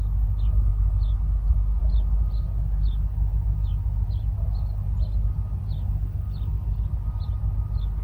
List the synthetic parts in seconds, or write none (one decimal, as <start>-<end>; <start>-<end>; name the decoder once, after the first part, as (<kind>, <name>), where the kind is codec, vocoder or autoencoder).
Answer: none